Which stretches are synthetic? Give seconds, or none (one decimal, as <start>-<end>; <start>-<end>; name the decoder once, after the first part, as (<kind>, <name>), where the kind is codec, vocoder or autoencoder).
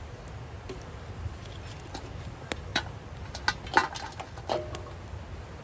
2.7-3.4 (vocoder, BigVGAN v2)